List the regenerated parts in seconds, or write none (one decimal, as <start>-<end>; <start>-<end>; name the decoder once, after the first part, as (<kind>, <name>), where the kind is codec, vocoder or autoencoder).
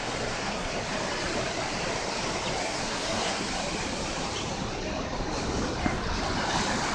0.0-0.7 (codec, SNAC); 2.6-3.5